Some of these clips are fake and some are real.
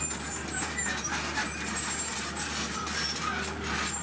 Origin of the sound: fake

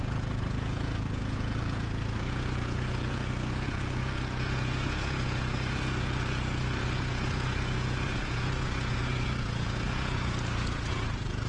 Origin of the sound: fake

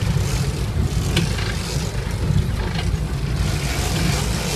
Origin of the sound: real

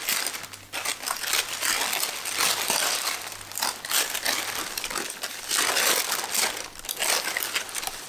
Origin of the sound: real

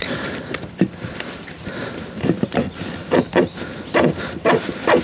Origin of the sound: real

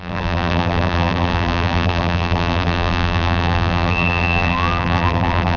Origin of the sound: fake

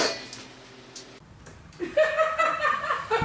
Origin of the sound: real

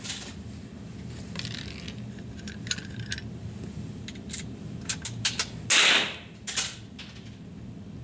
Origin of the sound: real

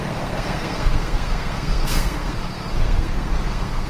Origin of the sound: fake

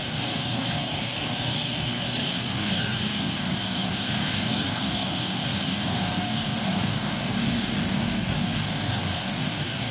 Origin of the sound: fake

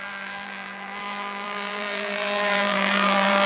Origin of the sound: fake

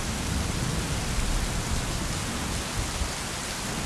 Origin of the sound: real